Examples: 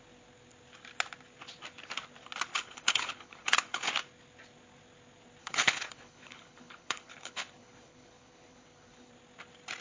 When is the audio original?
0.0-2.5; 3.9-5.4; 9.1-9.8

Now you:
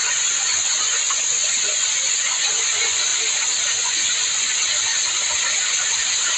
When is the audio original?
3.1-3.7; 4.5-6.4

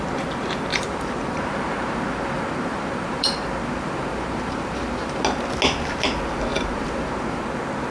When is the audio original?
0.0-0.7; 5.2-6.5; 7.4-7.9

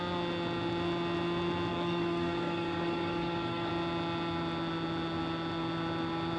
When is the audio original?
0.0-1.7; 3.7-6.4

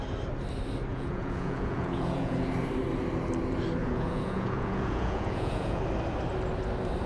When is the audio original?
0.0-0.9; 2.4-3.8; 5.8-7.1

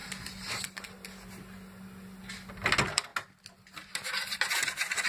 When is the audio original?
0.0-5.1

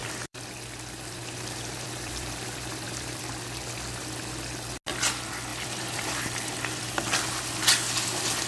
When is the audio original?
3.2-5.5; 6.1-8.5